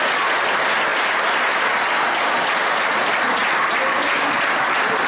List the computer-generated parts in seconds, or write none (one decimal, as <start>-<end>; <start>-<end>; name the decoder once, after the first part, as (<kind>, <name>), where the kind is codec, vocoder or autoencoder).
none